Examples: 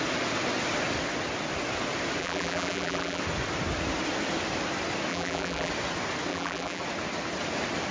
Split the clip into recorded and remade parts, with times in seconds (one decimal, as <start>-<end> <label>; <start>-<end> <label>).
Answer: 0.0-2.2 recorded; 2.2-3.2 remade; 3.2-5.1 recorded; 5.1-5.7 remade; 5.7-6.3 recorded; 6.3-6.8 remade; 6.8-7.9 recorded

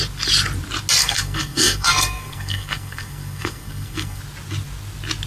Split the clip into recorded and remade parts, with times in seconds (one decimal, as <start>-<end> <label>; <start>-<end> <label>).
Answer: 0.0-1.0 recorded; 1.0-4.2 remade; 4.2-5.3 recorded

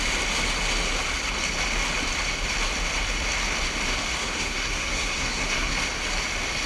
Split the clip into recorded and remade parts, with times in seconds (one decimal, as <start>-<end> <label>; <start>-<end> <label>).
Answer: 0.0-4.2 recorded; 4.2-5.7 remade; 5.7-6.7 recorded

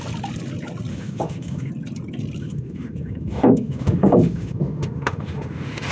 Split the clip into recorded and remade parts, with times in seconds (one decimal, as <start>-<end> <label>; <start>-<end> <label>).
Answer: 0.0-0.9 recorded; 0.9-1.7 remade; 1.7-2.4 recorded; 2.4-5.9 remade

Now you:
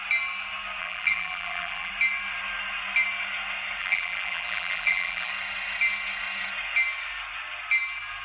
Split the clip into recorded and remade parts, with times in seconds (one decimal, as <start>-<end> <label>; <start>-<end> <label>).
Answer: 0.0-0.8 recorded; 0.8-1.9 remade; 1.9-3.8 recorded; 3.8-5.3 remade; 5.3-8.2 recorded

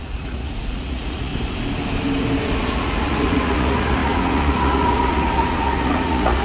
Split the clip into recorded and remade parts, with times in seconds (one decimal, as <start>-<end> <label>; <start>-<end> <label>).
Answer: 0.0-1.3 remade; 1.3-2.7 recorded; 2.7-6.4 remade

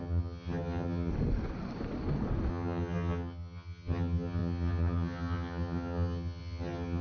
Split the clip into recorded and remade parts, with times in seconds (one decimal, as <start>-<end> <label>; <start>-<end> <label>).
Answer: 0.0-1.1 remade; 1.1-2.5 recorded; 2.5-7.0 remade

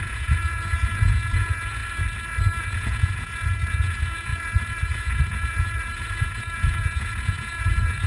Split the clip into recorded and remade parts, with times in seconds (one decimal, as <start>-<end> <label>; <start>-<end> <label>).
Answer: 0.0-1.8 remade; 1.8-2.6 recorded; 2.6-8.1 remade